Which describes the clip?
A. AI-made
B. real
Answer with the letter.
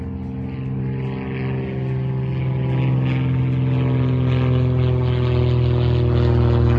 B